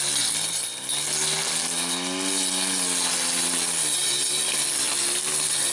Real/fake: real